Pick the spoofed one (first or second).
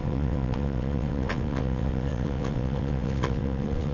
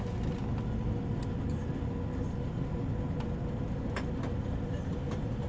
first